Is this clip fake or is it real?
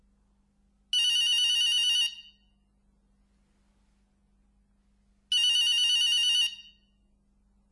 real